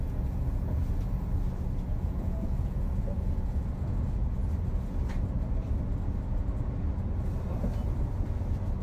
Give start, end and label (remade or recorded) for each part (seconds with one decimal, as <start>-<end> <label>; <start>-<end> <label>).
0.0-0.8 remade; 0.8-1.9 recorded; 1.9-4.4 remade; 4.4-8.8 recorded

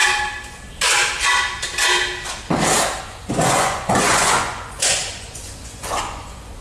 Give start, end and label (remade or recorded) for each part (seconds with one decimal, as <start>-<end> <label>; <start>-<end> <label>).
0.0-3.0 recorded; 3.0-6.6 remade

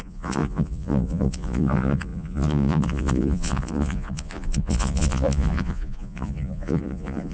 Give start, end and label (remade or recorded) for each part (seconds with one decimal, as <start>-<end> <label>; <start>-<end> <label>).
0.0-7.3 remade

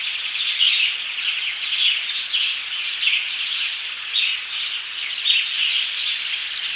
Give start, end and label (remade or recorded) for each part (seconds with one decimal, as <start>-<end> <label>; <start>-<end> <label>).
0.0-1.8 recorded; 1.8-4.5 remade; 4.5-6.8 recorded

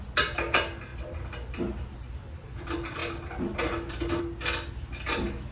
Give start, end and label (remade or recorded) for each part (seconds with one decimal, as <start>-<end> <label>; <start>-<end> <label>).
0.0-5.5 recorded